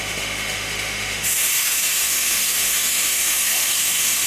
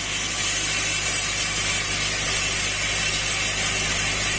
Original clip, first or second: second